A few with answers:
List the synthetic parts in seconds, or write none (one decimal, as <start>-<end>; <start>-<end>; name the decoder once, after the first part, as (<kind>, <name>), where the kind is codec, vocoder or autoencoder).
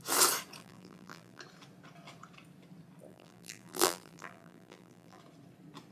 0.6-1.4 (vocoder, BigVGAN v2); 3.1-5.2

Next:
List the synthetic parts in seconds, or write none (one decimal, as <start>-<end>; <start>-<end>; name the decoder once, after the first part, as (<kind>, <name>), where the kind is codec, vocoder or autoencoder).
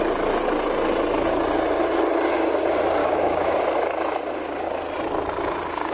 3.0-3.6 (autoencoder, DAC-VAE)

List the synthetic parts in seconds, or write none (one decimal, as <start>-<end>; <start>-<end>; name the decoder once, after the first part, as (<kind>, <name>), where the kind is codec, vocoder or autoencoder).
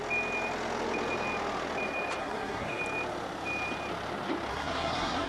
2.2-2.8 (codec, SNAC); 4.5-5.3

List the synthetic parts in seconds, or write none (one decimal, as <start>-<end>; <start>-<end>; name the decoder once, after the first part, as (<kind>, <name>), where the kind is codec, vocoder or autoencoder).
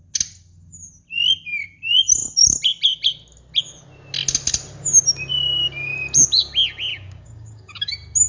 6.9-7.9 (codec, DAC)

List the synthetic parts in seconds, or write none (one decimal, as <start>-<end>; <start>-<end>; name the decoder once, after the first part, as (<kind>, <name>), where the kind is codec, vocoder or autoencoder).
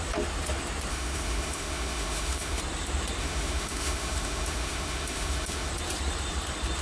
0.9-2.6 (autoencoder, DAC-VAE); 3.2-5.7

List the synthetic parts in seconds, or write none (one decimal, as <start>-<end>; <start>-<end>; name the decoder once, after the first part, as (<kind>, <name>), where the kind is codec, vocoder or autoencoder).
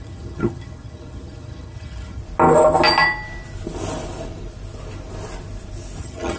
0.0-2.2 (vocoder, HiFi-GAN); 6.0-6.4